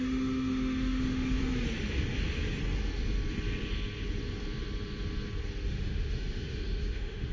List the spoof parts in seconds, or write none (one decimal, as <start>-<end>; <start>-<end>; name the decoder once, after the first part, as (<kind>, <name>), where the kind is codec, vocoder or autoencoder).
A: 0.0-1.4 (autoencoder, DAC-VAE); 5.7-7.3